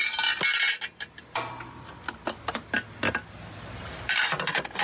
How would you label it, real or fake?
real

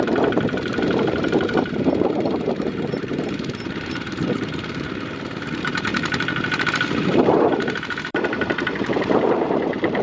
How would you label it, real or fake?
fake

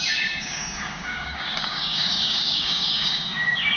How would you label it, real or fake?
fake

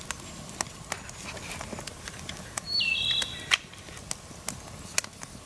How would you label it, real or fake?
real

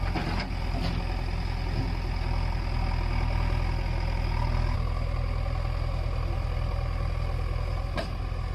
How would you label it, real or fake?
real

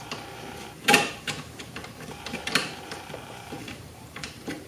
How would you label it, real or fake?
fake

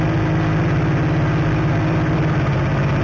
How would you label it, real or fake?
real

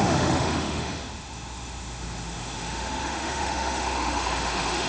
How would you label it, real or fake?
fake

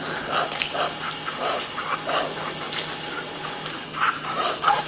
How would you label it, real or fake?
real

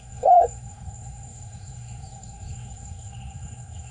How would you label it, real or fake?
fake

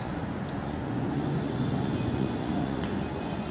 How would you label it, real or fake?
fake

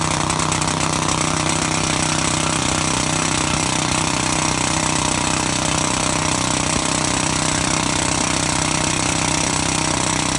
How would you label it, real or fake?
real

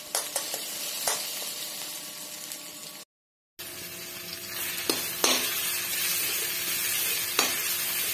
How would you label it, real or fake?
real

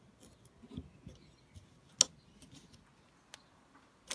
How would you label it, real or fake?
real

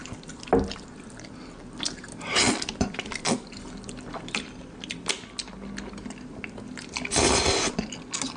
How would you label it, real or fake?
real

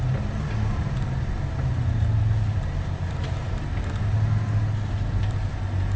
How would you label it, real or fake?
real